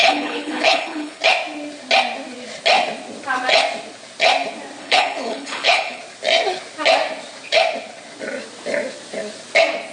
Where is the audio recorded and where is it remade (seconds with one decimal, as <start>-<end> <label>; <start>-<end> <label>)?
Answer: 0.0-1.2 remade; 1.2-4.8 recorded; 4.8-6.0 remade; 6.0-9.9 recorded